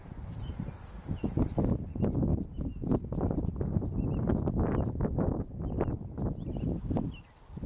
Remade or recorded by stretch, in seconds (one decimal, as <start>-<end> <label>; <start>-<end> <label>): 0.0-7.7 recorded